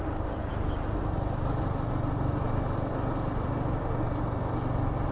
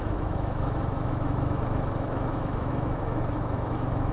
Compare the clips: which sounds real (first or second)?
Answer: first